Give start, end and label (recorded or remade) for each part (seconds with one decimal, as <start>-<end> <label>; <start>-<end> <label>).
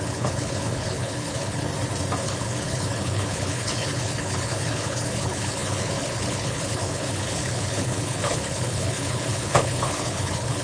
0.0-1.7 remade; 1.7-2.2 recorded; 2.2-10.6 remade